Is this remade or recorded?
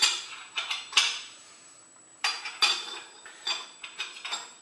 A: remade